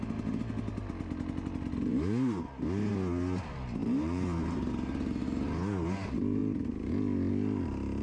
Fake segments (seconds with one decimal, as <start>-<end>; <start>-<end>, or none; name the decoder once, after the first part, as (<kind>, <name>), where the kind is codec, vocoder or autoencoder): 1.9-2.9 (vocoder, BigVGAN v2); 3.8-4.7

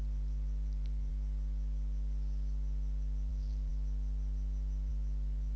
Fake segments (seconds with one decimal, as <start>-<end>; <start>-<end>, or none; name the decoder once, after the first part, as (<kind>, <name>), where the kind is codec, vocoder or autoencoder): 0.0-1.1 (vocoder, BigVGAN v2); 3.3-3.7; 4.9-5.6

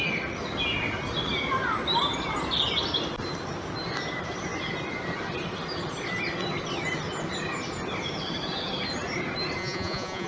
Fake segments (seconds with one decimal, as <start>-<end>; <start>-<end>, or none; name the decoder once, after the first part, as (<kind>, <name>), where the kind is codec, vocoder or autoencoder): 9.6-10.3 (vocoder, Vocos)

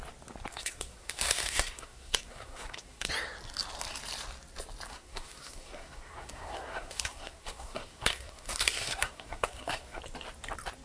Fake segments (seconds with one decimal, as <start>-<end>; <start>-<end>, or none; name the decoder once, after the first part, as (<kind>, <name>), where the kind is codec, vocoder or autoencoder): 0.5-3.1 (codec, SNAC); 4.9-10.0

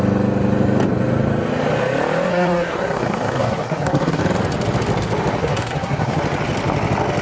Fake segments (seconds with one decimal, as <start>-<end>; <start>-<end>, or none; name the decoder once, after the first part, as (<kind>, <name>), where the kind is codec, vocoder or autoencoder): 2.3-4.2 (codec, SNAC); 5.4-6.2